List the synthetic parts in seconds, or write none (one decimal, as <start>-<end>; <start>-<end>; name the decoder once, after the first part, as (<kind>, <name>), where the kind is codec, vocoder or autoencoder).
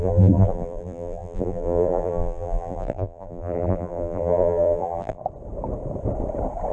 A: 0.0-5.2 (vocoder, BigVGAN v2)